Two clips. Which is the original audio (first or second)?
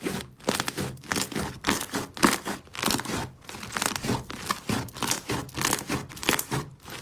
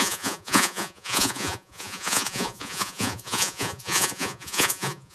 first